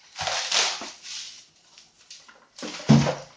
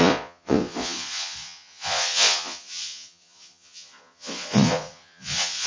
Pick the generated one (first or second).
second